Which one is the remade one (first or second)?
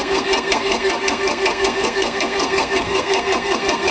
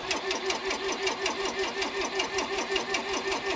first